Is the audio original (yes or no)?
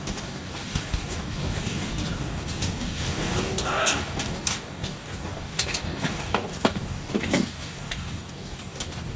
no